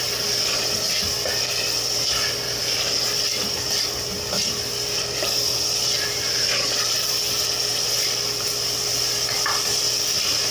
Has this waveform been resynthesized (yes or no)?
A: no